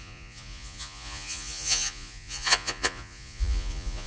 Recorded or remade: remade